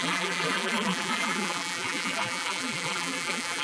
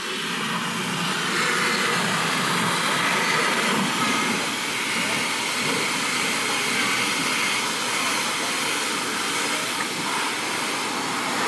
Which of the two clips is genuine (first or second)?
second